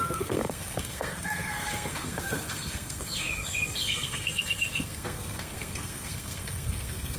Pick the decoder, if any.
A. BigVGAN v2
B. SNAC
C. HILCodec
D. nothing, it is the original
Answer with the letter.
B